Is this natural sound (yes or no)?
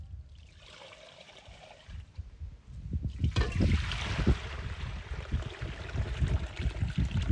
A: yes